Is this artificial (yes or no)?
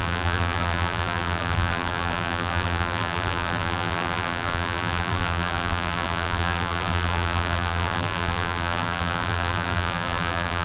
yes